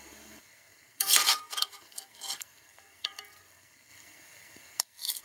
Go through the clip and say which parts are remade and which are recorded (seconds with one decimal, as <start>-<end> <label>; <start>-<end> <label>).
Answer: 0.0-5.2 remade